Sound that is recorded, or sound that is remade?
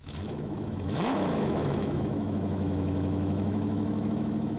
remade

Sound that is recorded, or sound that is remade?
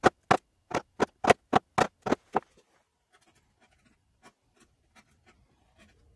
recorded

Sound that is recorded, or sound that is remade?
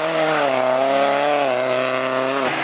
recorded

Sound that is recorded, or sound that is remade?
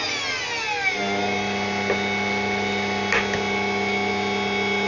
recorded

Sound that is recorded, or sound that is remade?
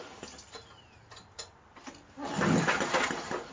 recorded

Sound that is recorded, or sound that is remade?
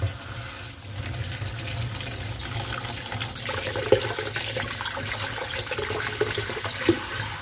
recorded